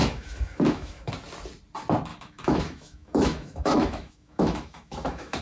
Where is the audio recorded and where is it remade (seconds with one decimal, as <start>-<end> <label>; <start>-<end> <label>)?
0.0-1.1 remade; 1.1-2.1 recorded; 2.1-5.4 remade